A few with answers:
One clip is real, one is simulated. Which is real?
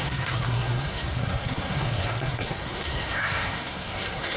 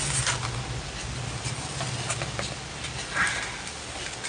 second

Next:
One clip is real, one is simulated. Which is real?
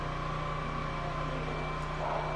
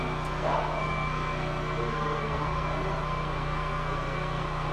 first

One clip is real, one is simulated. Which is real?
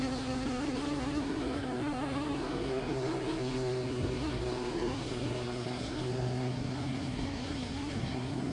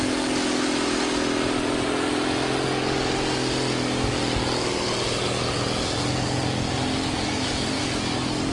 second